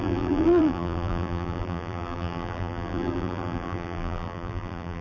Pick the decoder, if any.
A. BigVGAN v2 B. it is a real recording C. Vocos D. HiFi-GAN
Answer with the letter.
A